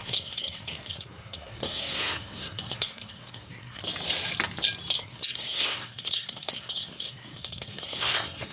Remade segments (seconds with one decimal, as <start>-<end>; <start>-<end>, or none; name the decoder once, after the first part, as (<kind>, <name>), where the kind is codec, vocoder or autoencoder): 0.0-3.8 (codec, SNAC); 5.0-8.5